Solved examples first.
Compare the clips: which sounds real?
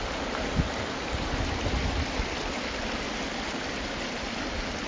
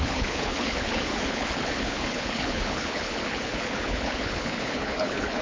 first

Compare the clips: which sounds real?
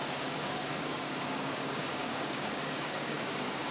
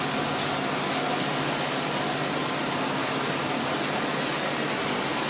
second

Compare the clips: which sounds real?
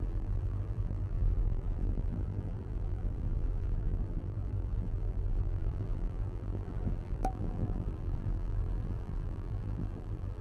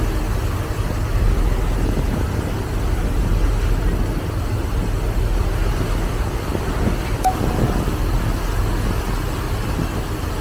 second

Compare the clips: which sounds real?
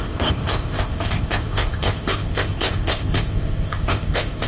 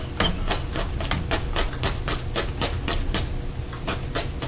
second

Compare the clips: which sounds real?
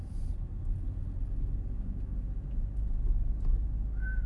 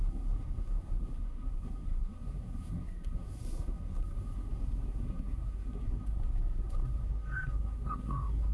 first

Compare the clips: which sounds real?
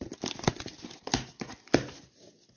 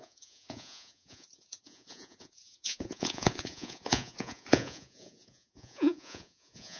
first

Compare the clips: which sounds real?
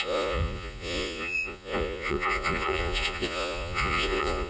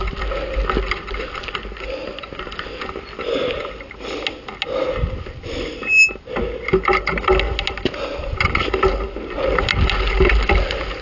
second